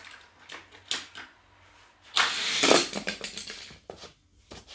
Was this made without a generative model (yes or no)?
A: yes